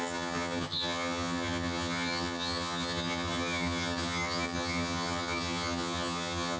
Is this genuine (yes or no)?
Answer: no